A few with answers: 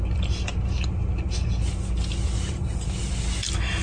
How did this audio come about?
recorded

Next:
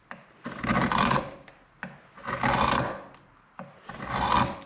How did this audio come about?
recorded